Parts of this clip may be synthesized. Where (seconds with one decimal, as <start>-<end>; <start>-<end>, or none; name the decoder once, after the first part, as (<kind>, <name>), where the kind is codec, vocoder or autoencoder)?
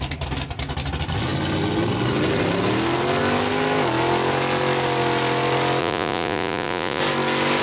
5.8-7.0 (vocoder, Vocos)